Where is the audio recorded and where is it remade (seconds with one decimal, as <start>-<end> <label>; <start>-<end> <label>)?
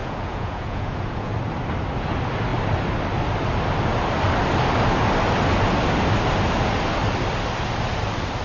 0.0-1.3 remade; 1.3-8.4 recorded